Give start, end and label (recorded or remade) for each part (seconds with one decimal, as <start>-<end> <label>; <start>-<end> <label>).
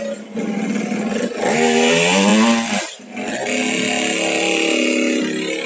0.0-5.7 recorded